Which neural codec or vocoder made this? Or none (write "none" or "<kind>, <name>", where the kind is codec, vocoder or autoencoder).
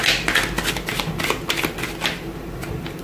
none